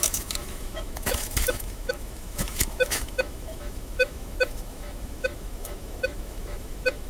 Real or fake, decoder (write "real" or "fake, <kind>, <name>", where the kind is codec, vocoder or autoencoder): fake, autoencoder, DAC-VAE